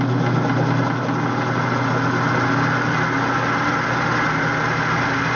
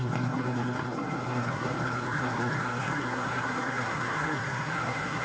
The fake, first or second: second